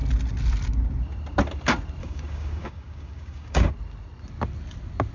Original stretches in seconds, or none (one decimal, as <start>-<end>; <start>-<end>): 0.0-2.0; 3.7-5.1